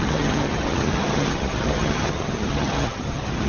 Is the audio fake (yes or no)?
yes